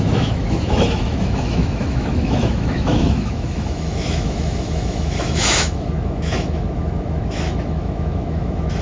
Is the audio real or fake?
fake